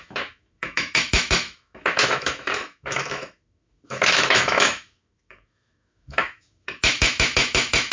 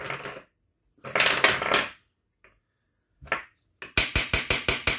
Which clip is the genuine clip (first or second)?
second